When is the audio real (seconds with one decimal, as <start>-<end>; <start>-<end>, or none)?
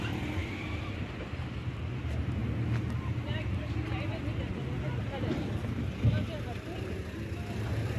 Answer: 2.4-3.0